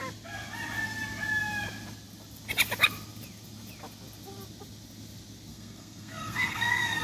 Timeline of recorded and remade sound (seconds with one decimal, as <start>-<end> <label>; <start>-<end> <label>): 0.0-5.5 recorded; 5.5-7.0 remade